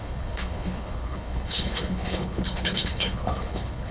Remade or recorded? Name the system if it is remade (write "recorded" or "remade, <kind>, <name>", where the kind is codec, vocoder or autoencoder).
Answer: remade, codec, HILCodec